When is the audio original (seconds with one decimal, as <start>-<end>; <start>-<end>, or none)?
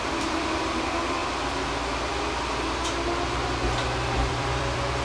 1.2-4.2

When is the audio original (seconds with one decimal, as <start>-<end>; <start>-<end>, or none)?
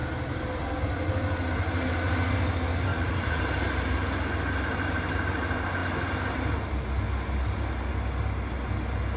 0.0-2.9; 3.4-9.2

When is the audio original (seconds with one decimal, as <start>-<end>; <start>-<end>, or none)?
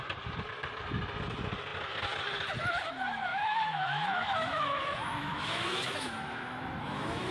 0.0-3.3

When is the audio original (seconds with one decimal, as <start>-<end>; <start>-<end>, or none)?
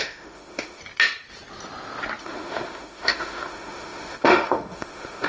0.8-2.2